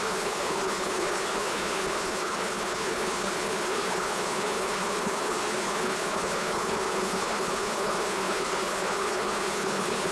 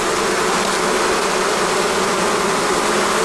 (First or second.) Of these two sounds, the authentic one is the second